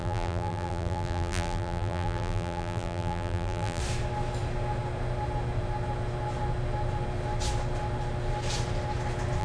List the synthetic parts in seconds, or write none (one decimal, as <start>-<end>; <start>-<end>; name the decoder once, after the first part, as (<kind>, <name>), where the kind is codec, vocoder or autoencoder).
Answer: 0.0-3.8 (vocoder, BigVGAN v2)